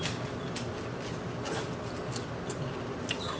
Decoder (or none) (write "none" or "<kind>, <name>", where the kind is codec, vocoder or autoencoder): none